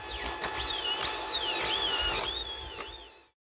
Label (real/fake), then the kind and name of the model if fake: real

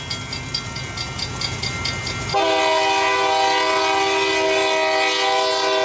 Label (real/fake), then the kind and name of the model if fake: real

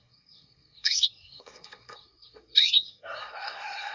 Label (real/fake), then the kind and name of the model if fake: fake, codec, SNAC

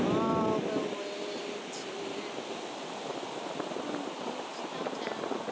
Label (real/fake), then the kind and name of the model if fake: real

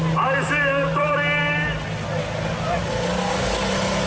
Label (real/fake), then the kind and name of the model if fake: real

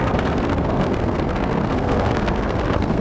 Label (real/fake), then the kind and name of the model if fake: fake, codec, SNAC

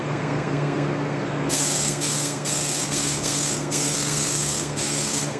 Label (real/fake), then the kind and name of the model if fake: fake, codec, SNAC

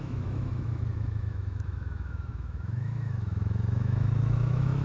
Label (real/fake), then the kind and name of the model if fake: fake, autoencoder, DAC-VAE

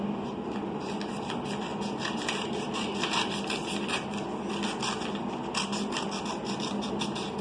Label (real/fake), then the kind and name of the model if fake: real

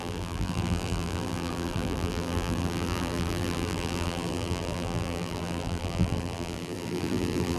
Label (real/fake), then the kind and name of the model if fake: fake, vocoder, BigVGAN v2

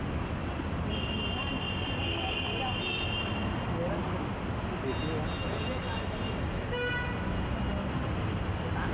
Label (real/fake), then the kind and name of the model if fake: real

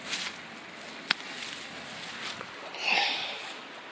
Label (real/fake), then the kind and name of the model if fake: real